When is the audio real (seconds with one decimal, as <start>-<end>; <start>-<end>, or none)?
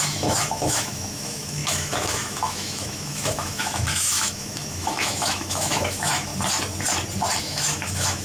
6.3-7.4